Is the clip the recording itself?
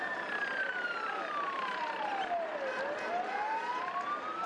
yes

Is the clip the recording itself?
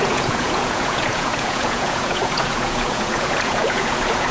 no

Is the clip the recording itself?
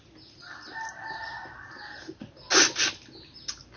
yes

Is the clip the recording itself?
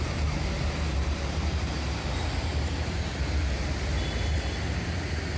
yes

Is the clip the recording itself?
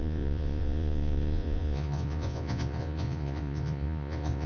no